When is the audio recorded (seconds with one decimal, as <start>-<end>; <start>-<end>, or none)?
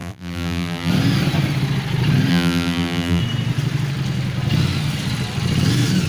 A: 0.9-2.3; 3.2-6.1